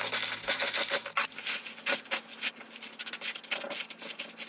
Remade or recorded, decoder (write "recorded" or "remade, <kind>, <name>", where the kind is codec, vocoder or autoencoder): recorded